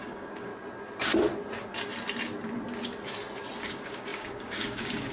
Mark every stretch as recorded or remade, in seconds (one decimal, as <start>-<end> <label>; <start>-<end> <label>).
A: 0.0-0.5 remade; 0.5-3.6 recorded; 3.6-5.1 remade